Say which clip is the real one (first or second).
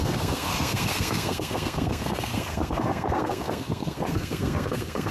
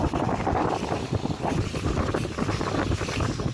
second